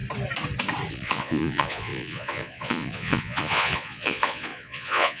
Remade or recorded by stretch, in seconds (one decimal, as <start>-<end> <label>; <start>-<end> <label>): 0.0-0.9 recorded; 0.9-5.2 remade